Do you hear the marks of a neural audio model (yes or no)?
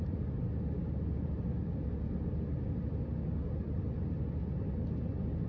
no